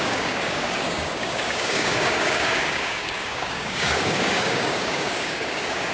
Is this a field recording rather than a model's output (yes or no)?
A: no